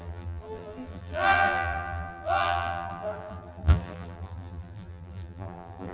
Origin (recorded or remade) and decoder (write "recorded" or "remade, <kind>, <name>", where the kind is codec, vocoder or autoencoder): remade, vocoder, BigVGAN v2